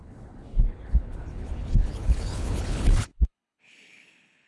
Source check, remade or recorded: remade